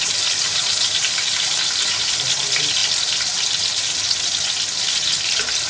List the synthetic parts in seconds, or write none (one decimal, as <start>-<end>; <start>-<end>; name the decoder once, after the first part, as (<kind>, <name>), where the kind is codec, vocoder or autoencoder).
none